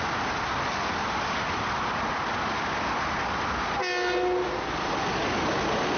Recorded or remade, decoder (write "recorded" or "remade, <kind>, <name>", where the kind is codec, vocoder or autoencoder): recorded